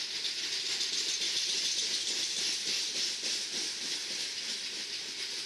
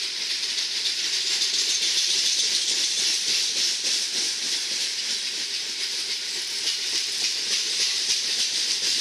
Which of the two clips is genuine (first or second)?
first